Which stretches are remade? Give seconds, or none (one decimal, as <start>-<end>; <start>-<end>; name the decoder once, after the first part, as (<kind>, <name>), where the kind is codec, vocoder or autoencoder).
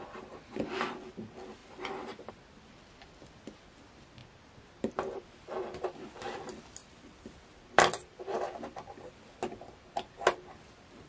1.6-2.3 (vocoder, BigVGAN v2); 4.2-4.9; 6.8-8.5